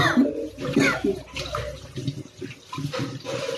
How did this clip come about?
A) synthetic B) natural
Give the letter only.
B